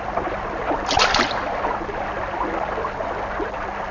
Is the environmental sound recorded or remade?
recorded